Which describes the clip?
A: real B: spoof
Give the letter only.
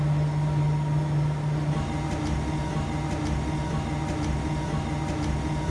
A